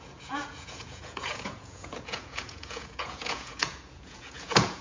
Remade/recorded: remade